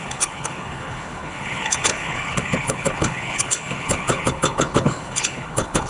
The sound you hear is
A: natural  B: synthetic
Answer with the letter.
B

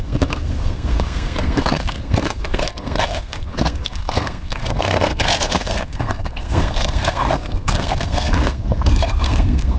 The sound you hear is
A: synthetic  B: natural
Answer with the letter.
A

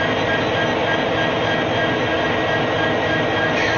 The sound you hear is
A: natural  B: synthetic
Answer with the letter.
A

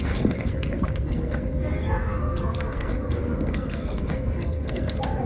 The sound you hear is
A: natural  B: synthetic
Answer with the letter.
B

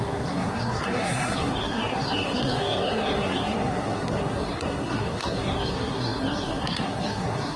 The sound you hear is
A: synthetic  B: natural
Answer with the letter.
A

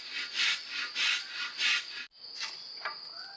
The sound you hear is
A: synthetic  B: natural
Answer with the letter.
B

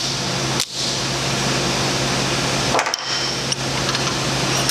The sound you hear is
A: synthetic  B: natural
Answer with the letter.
B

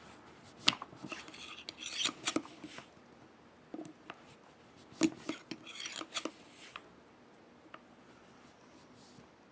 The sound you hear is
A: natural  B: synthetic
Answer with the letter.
A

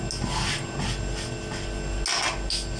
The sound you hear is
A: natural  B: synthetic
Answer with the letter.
A